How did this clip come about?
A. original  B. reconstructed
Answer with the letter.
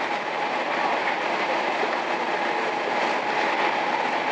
A